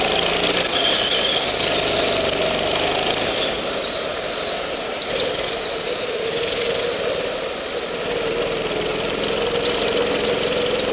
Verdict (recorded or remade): recorded